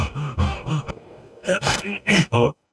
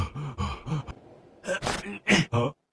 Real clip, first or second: second